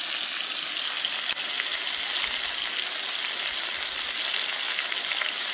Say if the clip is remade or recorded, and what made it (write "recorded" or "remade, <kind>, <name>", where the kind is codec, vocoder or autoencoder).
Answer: recorded